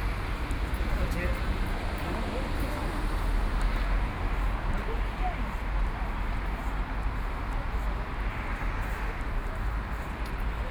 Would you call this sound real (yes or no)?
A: yes